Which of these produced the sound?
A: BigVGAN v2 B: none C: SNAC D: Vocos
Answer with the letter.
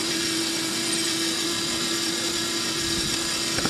B